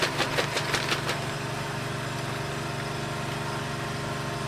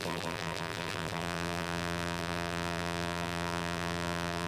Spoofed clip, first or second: second